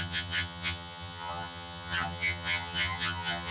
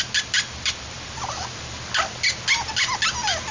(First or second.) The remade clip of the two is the first